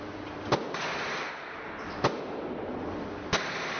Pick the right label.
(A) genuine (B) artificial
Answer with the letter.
A